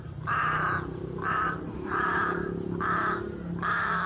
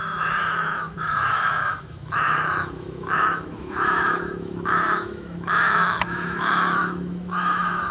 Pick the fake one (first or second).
second